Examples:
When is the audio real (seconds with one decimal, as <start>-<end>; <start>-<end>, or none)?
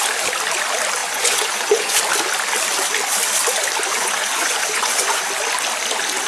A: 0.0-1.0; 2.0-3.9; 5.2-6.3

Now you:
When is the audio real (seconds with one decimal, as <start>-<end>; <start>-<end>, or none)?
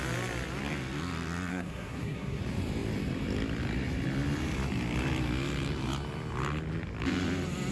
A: 0.0-1.5; 2.4-7.7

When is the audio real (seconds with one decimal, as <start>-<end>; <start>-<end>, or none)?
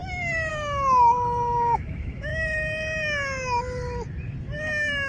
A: 0.0-0.5; 2.3-5.1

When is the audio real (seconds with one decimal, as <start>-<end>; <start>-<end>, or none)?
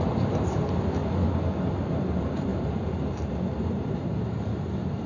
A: 1.0-1.7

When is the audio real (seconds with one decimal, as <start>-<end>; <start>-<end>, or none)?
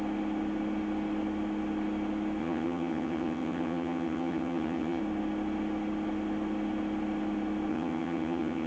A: 0.0-2.4; 5.0-7.7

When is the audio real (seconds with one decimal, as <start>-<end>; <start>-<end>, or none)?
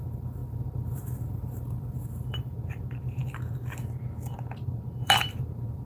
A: 3.2-4.6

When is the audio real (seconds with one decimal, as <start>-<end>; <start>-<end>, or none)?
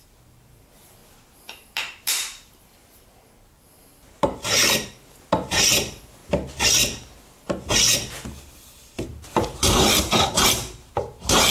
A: 6.2-8.8